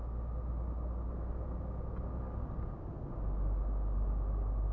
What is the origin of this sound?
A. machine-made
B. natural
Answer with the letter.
B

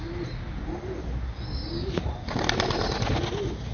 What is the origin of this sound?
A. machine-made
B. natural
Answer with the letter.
B